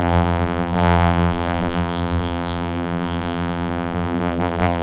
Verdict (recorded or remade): remade